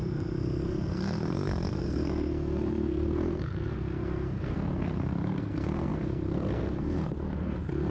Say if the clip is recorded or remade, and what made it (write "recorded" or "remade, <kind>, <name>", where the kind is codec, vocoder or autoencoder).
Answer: remade, codec, SNAC